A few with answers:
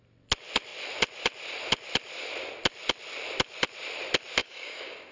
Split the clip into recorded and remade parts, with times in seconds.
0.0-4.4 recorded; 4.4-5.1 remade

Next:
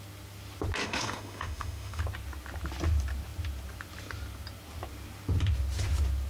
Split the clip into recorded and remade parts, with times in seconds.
0.0-0.8 recorded; 0.8-2.0 remade; 2.0-6.3 recorded

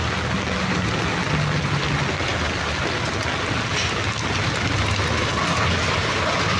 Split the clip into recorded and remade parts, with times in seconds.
0.0-6.6 recorded

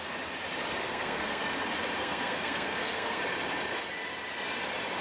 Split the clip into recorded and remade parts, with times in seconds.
0.0-0.8 recorded; 0.8-1.4 remade; 1.4-2.0 recorded; 2.0-3.2 remade; 3.2-5.0 recorded

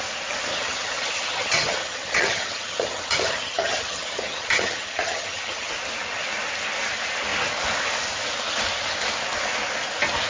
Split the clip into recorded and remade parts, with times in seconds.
0.0-0.5 recorded; 0.5-5.7 remade; 5.7-10.3 recorded

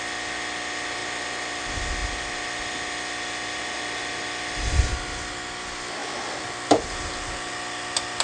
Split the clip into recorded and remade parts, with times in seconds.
0.0-1.0 recorded; 1.0-1.6 remade; 1.6-6.0 recorded; 6.0-7.5 remade; 7.5-8.2 recorded

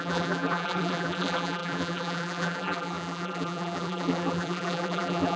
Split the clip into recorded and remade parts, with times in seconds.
0.0-5.4 remade